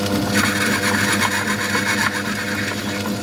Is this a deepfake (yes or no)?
no